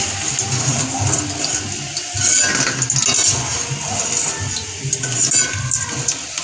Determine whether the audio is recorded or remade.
recorded